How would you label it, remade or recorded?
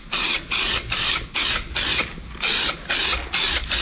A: recorded